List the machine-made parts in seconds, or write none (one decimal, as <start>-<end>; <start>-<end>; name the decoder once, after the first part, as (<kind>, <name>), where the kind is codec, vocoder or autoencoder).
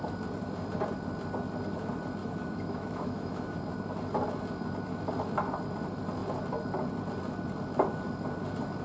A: 2.2-3.6 (autoencoder, DAC-VAE)